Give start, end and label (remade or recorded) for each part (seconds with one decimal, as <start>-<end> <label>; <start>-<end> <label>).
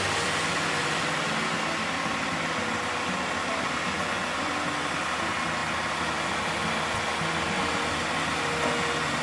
0.0-4.0 recorded; 4.0-4.5 remade; 4.5-9.2 recorded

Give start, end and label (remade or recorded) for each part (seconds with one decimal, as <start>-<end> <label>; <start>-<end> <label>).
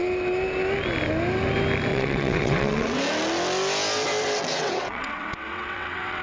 0.0-1.9 recorded; 1.9-3.0 remade; 3.0-4.5 recorded; 4.5-6.2 remade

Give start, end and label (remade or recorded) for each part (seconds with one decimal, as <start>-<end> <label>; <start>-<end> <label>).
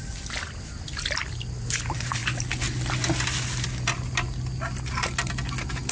0.0-5.9 recorded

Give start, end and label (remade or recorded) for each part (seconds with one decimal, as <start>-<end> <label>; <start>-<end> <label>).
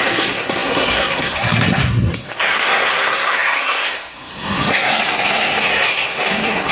0.0-6.7 remade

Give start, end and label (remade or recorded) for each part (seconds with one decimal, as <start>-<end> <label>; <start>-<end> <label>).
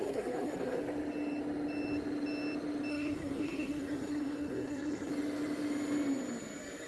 0.0-0.8 remade; 0.8-2.9 recorded; 2.9-5.1 remade; 5.1-6.9 recorded